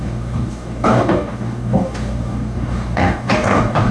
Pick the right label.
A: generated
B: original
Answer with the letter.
A